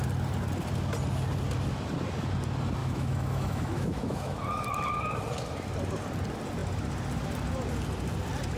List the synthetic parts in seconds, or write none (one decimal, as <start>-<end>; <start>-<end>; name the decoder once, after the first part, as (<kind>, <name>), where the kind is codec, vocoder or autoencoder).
2.8-4.4 (autoencoder, DAC-VAE)